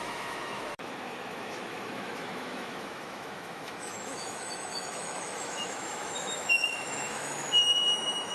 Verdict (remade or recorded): remade